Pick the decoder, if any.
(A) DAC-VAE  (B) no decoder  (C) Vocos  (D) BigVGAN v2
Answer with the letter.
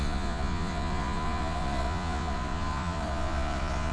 C